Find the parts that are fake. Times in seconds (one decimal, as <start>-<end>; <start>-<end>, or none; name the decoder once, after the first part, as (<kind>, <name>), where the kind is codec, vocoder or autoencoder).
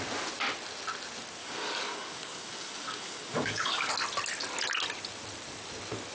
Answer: 1.4-3.9 (codec, DAC)